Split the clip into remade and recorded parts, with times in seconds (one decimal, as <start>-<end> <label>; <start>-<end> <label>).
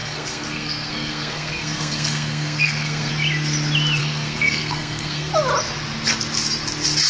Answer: 0.0-3.1 remade; 3.1-4.0 recorded; 4.0-5.3 remade; 5.3-7.1 recorded